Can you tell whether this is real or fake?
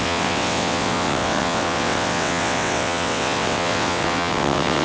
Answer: fake